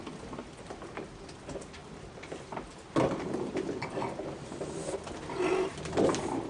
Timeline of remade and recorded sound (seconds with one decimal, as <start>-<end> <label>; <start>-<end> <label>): 0.0-6.5 recorded